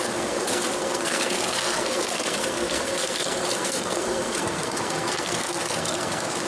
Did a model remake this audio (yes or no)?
yes